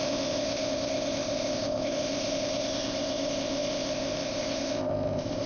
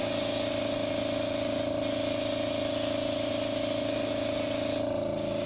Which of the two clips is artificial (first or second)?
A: first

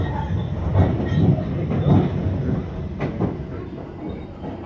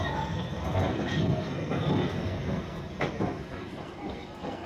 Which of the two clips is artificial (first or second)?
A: second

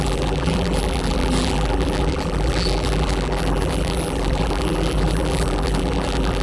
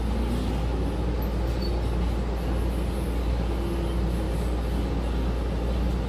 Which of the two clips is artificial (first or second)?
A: first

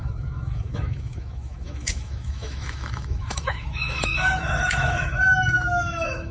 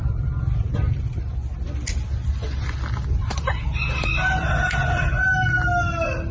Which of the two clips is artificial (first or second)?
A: first